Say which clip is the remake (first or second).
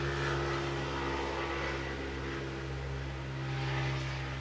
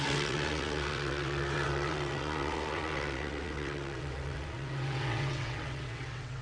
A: second